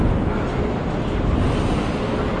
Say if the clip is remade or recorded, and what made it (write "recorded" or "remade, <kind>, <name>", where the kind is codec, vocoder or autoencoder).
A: recorded